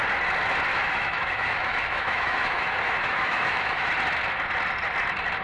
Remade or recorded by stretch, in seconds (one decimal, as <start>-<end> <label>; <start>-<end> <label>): 0.0-0.7 recorded; 0.7-3.9 remade; 3.9-5.4 recorded